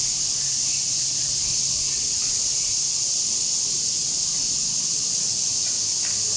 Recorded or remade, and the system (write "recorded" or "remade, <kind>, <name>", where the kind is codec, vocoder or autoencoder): recorded